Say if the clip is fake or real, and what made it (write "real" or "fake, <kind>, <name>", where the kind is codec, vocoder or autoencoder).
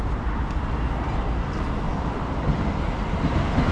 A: real